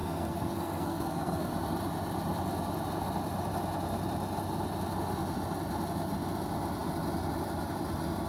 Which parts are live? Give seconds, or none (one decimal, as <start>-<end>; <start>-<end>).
1.5-8.3